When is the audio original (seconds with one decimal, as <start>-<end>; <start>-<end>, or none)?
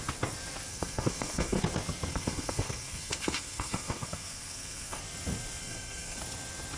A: 0.0-0.7; 1.6-2.1; 5.0-5.6; 6.2-6.8